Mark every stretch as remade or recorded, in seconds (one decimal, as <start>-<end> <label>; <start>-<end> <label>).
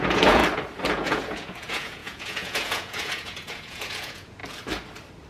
0.0-0.4 remade; 0.4-0.9 recorded; 0.9-4.4 remade; 4.4-5.3 recorded